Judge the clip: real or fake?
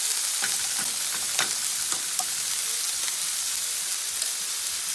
real